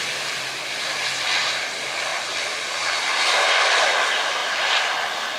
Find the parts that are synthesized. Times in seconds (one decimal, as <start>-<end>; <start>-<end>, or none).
none